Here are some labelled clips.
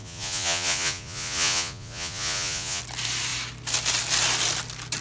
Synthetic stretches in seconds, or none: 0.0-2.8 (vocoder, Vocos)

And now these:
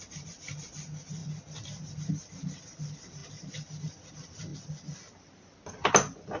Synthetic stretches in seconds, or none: 0.0-1.2 (vocoder, BigVGAN v2); 1.9-4.5; 5.9-6.4

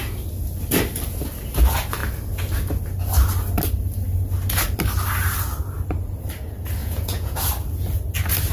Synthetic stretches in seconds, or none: 6.8-7.4 (vocoder, Vocos)

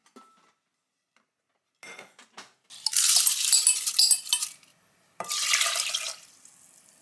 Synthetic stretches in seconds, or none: 4.7-6.3 (vocoder, BigVGAN v2)

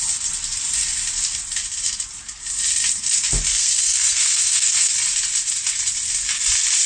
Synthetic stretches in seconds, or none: 3.5-4.9 (codec, SNAC)

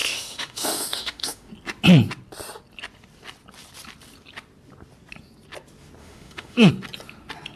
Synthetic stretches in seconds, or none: 0.0-1.5 (autoencoder, DAC-VAE); 6.0-6.7

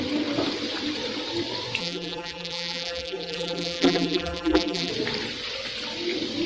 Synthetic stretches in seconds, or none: 1.8-4.9 (vocoder, BigVGAN v2)